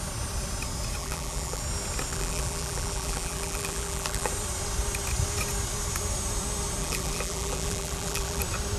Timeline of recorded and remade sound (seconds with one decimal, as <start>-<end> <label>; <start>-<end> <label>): 0.0-1.0 recorded; 1.0-1.6 remade; 1.6-2.1 recorded; 2.1-4.3 remade; 4.3-6.8 recorded; 6.8-8.4 remade; 8.4-8.8 recorded